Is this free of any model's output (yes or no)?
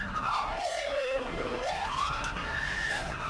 no